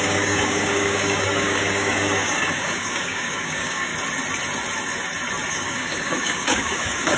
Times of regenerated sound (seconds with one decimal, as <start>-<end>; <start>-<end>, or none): 0.0-3.9; 5.5-7.2